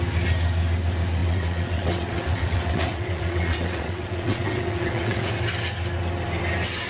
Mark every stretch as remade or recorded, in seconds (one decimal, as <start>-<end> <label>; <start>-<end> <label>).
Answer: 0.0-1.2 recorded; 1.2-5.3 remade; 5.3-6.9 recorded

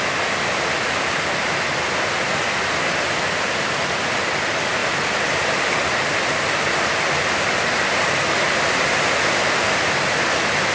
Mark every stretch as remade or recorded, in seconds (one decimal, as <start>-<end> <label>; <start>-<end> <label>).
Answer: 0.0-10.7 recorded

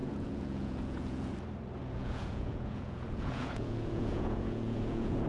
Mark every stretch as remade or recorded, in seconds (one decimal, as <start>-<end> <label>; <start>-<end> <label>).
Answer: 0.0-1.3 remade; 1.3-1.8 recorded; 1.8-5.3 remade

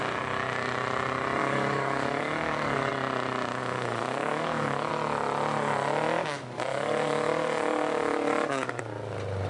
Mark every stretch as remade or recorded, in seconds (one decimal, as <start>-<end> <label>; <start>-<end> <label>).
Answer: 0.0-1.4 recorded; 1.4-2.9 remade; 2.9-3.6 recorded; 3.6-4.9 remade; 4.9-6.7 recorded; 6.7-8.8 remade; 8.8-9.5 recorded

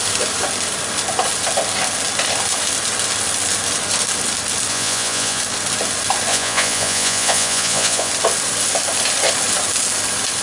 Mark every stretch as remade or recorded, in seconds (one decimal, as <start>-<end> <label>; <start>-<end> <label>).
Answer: 0.0-4.7 recorded; 4.7-5.4 remade; 5.4-6.3 recorded; 6.3-8.1 remade; 8.1-10.4 recorded

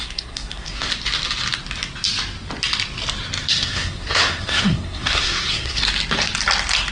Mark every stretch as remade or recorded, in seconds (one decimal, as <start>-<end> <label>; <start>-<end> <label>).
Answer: 0.0-0.9 remade; 0.9-3.5 recorded; 3.5-5.8 remade; 5.8-6.9 recorded